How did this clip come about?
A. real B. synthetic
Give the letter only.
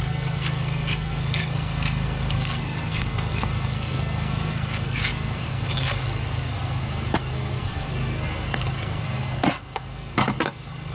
B